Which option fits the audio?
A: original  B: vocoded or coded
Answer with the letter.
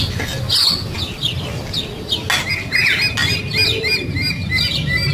A